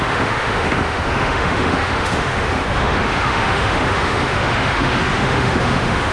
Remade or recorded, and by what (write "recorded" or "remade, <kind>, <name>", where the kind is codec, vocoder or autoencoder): remade, autoencoder, DAC-VAE